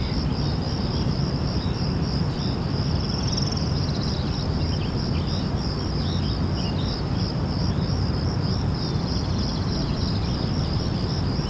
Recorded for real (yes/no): no